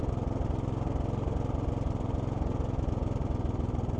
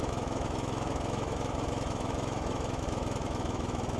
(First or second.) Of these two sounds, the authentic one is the first